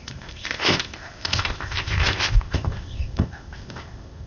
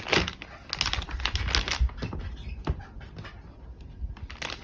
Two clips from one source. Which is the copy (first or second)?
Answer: first